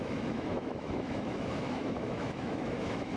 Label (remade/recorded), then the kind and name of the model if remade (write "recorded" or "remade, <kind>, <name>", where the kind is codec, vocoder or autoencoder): remade, autoencoder, DAC-VAE